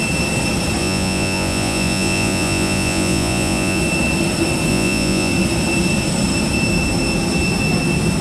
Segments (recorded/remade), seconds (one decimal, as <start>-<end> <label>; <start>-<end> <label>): 0.0-0.8 recorded; 0.8-3.8 remade; 3.8-4.7 recorded; 4.7-5.3 remade; 5.3-8.2 recorded